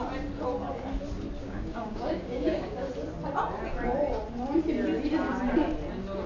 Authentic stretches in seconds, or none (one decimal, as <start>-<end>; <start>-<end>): 0.0-1.4; 2.9-6.3